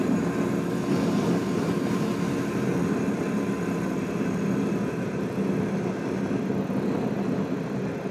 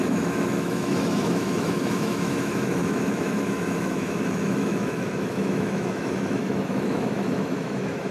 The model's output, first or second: second